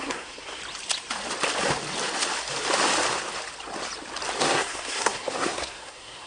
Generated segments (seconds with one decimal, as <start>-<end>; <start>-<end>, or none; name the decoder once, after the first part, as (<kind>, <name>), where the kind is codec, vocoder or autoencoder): 0.0-0.6 (codec, SNAC); 4.4-6.3